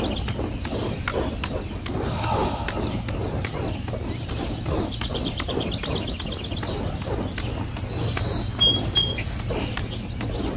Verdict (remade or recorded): recorded